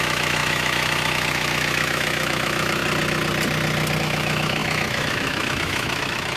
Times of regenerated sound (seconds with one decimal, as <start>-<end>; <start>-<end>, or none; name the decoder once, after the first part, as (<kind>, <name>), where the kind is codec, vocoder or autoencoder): 0.0-2.8 (autoencoder, DAC-VAE); 4.0-6.4